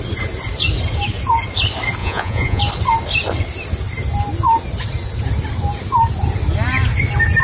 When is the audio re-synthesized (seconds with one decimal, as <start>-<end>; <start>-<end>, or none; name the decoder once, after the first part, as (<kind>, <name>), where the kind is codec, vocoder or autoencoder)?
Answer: 2.0-2.6 (vocoder, Vocos)